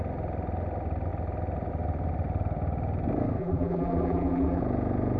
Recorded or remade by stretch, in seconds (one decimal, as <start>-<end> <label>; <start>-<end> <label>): 0.0-3.4 recorded; 3.4-4.6 remade; 4.6-5.2 recorded